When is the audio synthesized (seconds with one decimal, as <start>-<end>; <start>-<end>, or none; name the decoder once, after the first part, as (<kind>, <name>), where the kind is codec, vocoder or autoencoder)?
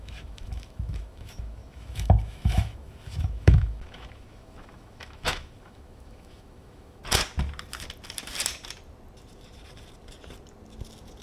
0.0-7.0 (autoencoder, DAC-VAE)